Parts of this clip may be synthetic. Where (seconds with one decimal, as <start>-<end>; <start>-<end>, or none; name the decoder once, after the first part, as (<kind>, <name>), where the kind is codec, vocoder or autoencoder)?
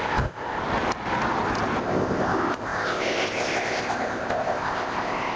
0.0-0.6 (codec, ZipCodec); 1.8-5.4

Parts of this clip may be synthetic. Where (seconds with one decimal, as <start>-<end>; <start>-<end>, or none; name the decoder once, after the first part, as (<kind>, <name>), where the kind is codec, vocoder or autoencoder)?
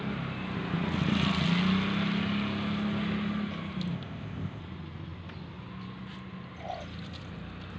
3.9-4.6 (codec, ZipCodec)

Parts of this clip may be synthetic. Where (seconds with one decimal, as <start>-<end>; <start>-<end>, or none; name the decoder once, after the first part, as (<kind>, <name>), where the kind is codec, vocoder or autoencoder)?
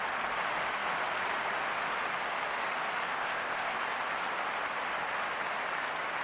3.2-3.8 (codec, ZipCodec)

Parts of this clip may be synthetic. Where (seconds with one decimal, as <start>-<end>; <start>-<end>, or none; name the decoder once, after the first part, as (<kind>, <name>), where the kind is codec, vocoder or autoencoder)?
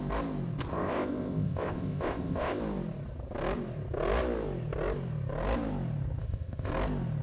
0.7-2.6 (codec, ZipCodec); 6.2-6.7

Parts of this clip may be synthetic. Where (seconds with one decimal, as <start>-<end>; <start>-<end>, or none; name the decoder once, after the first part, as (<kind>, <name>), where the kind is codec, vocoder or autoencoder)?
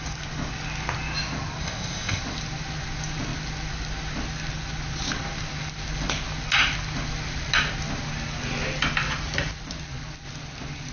1.6-2.2 (codec, ZipCodec)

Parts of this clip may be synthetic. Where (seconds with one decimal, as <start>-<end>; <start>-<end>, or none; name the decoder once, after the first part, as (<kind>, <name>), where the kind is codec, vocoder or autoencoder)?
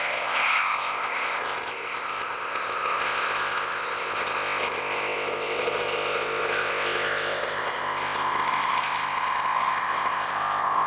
0.0-10.9 (codec, ZipCodec)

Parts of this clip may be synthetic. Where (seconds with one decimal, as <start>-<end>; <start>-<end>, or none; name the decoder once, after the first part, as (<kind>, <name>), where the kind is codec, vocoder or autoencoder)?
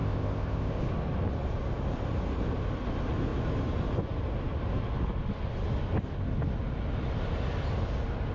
0.0-0.8 (codec, ZipCodec)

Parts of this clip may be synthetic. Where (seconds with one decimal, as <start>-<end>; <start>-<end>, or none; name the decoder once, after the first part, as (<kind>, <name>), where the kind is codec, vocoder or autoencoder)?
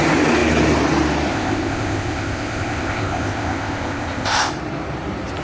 1.3-4.5 (codec, ZipCodec)